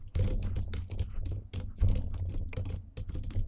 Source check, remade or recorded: recorded